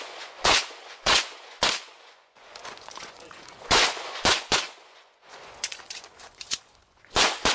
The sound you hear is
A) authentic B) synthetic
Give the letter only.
B